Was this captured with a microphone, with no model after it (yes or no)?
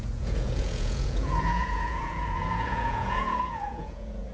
no